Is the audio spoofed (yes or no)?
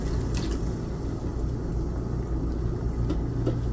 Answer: no